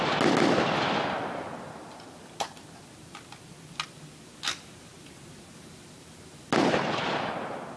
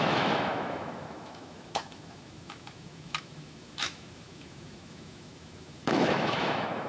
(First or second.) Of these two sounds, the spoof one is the second